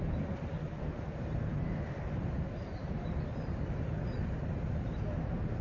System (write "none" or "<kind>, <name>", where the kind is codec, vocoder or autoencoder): vocoder, BigVGAN v2